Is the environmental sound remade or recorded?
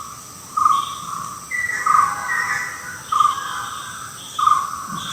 recorded